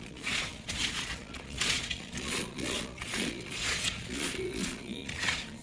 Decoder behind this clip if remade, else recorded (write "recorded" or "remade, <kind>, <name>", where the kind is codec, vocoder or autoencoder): remade, vocoder, Vocos